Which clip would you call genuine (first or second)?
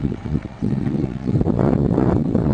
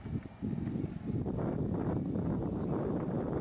second